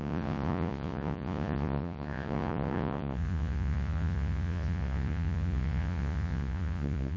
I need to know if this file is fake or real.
fake